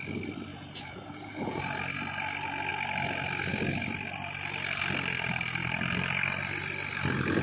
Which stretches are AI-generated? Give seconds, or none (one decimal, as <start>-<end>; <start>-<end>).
0.5-1.6